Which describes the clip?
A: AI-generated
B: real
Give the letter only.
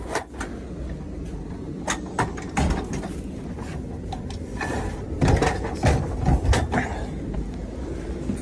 B